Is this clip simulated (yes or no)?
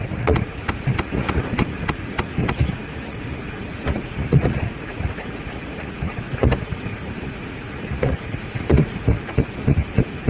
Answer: yes